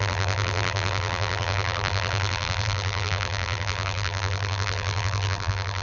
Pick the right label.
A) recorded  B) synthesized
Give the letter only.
B